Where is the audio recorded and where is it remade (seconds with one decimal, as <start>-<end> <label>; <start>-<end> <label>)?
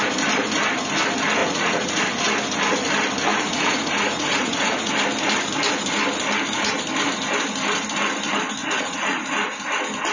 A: 0.0-1.4 recorded; 1.4-2.0 remade; 2.0-3.3 recorded; 3.3-4.9 remade; 4.9-8.6 recorded; 8.6-9.2 remade; 9.2-10.1 recorded